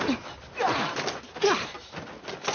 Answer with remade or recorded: recorded